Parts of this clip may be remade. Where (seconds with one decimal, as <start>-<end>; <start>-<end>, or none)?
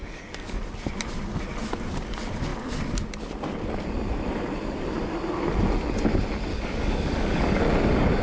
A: 0.0-0.6; 6.5-7.6